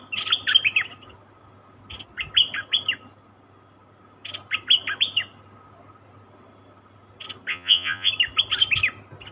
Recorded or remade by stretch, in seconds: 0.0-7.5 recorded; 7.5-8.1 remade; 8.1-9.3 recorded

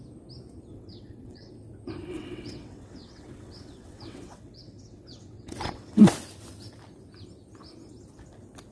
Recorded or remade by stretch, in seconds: 0.0-0.7 recorded; 0.7-1.5 remade; 1.5-2.1 recorded; 2.1-6.0 remade; 6.0-8.7 recorded

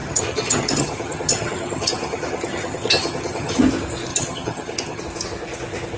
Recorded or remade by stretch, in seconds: 0.0-3.6 remade; 3.6-4.1 recorded; 4.1-5.0 remade; 5.0-6.0 recorded

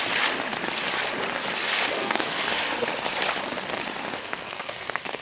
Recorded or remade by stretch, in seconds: 0.0-2.0 recorded; 2.0-2.9 remade; 2.9-4.2 recorded; 4.2-5.2 remade

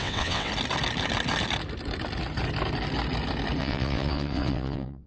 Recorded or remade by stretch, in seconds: 0.0-0.5 remade; 0.5-3.6 recorded; 3.6-5.1 remade